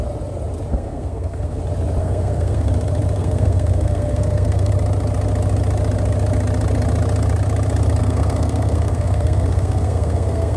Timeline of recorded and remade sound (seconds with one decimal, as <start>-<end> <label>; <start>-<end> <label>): 0.0-0.7 recorded; 0.7-1.6 remade; 1.6-2.0 recorded; 2.0-2.7 remade; 2.7-3.2 recorded; 3.2-4.7 remade; 4.7-8.0 recorded; 8.0-10.6 remade